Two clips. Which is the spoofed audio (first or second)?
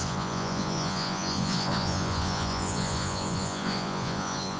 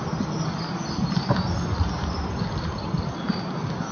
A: first